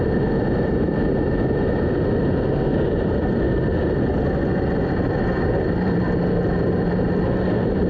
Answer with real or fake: real